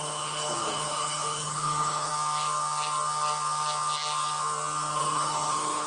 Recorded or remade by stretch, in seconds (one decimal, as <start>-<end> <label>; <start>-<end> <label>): 0.0-2.1 remade; 2.1-5.0 recorded; 5.0-5.9 remade

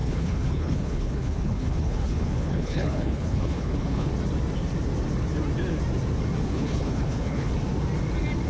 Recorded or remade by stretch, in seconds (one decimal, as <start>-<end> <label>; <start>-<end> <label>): 0.0-4.1 remade; 4.1-6.5 recorded; 6.5-7.5 remade; 7.5-8.5 recorded